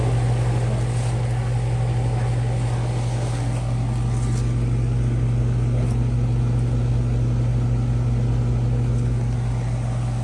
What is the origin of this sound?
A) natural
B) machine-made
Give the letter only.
A